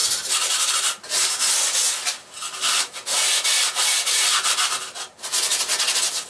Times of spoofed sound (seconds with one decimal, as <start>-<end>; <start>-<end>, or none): none